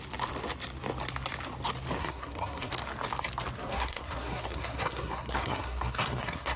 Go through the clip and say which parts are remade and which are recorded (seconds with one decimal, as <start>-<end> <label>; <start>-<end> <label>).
0.0-2.0 recorded; 2.0-2.7 remade; 2.7-3.6 recorded; 3.6-6.6 remade